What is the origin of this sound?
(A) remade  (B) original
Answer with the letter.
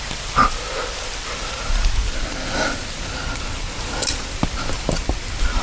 A